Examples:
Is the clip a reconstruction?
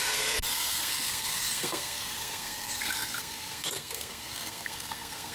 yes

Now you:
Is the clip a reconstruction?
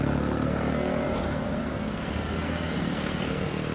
yes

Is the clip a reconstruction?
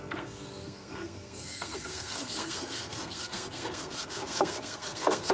yes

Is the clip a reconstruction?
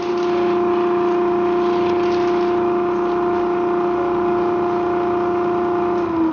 no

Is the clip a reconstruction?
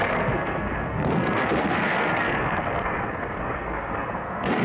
yes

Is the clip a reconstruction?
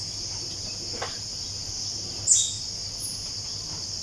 no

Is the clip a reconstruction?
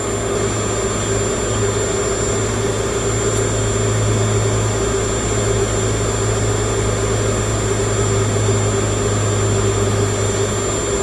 no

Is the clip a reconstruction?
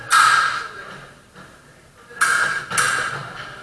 no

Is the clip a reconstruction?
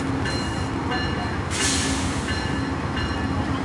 no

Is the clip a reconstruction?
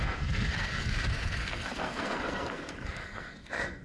yes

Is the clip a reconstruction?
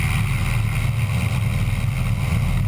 no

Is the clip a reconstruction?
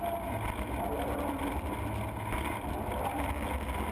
no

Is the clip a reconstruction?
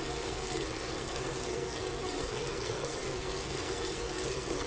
yes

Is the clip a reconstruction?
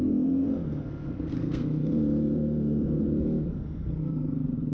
yes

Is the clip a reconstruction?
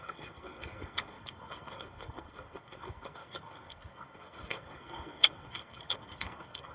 yes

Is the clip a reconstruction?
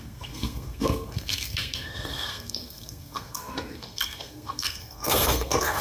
yes